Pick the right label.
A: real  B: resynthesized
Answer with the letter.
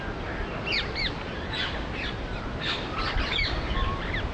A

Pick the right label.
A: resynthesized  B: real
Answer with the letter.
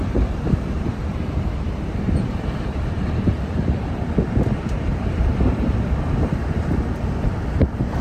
A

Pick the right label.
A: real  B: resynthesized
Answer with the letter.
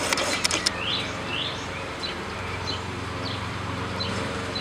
B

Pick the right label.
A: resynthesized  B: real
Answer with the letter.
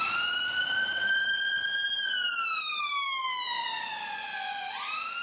B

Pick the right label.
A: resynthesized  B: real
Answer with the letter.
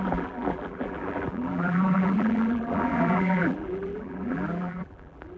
A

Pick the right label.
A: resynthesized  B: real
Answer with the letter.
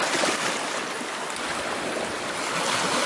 B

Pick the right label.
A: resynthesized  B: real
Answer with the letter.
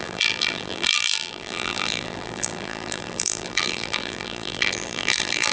A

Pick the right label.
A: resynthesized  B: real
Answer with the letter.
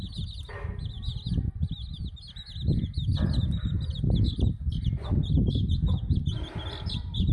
B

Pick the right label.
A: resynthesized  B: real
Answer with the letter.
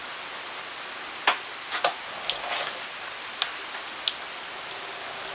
B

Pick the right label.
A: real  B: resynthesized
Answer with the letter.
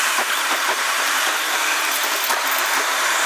B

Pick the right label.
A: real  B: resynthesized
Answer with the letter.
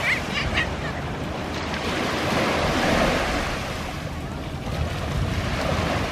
A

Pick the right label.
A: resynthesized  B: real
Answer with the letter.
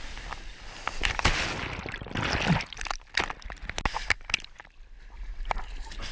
B